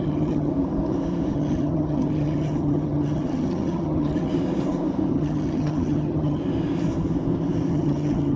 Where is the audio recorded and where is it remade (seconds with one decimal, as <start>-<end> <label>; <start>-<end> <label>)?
0.0-0.5 remade; 0.5-1.3 recorded; 1.3-4.3 remade; 4.3-5.1 recorded; 5.1-6.4 remade; 6.4-7.7 recorded; 7.7-8.4 remade